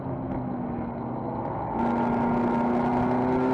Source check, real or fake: real